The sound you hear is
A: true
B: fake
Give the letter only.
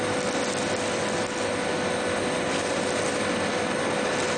A